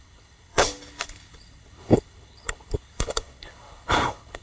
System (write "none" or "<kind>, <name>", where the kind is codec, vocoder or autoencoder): codec, HILCodec